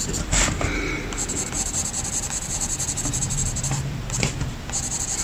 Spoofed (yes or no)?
yes